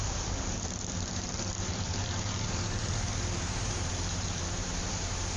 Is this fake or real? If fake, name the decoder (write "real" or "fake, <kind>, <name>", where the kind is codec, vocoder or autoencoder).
fake, vocoder, BigVGAN v2